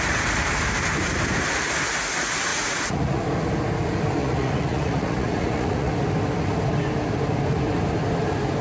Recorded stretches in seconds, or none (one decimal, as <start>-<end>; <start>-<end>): 0.0-2.5; 3.2-4.2; 5.9-8.6